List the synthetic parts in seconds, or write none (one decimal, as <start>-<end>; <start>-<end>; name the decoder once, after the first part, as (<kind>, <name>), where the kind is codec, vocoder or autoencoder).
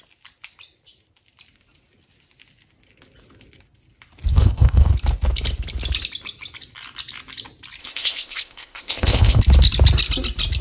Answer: 4.3-4.9 (codec, ZipCodec); 7.8-9.4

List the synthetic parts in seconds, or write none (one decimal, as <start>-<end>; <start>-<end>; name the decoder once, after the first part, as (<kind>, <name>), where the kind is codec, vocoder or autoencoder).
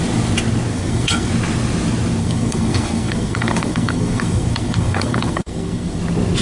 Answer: 0.7-1.3 (codec, SNAC); 2.2-6.0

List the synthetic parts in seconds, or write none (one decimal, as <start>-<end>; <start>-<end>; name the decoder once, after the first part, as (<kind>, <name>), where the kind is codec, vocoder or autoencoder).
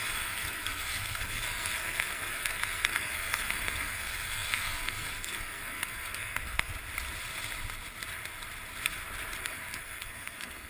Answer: 0.0-6.7 (codec, SNAC); 9.4-10.7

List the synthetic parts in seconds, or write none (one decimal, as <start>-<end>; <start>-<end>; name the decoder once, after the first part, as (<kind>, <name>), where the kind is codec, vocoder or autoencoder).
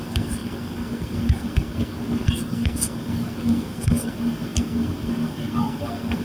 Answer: 0.0-6.2 (codec, SNAC)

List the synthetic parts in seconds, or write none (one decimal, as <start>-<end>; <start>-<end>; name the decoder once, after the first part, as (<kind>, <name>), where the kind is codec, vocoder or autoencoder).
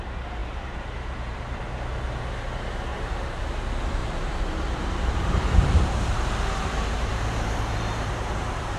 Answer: 0.4-1.6 (vocoder, BigVGAN v2); 2.9-3.6; 4.0-8.8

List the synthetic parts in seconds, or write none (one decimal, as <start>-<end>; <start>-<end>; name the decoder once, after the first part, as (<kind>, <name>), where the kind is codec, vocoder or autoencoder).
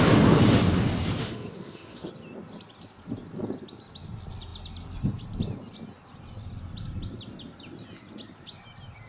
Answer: 1.2-2.1 (autoencoder, DAC-VAE)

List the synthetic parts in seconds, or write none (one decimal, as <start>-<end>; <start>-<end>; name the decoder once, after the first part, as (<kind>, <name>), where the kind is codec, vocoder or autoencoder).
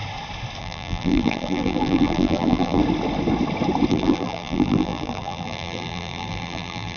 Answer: 0.6-2.8 (vocoder, BigVGAN v2); 3.9-7.0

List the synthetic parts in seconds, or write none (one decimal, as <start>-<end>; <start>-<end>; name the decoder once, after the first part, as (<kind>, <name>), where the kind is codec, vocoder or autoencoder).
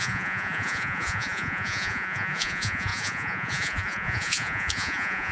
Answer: 0.0-5.3 (vocoder, Vocos)